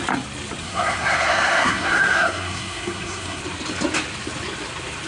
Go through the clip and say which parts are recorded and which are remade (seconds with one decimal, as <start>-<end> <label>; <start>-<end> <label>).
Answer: 0.0-0.6 recorded; 0.6-3.4 remade; 3.4-5.1 recorded